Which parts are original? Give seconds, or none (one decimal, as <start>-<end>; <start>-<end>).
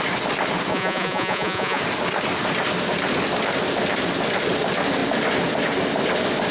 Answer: 0.0-0.7; 1.8-6.5